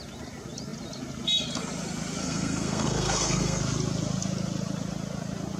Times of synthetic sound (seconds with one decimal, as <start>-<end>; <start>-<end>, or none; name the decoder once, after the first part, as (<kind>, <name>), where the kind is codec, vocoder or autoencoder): 2.2-3.6 (codec, SNAC)